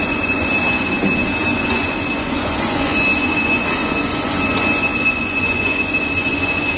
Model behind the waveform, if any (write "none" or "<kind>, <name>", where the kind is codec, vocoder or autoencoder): vocoder, Vocos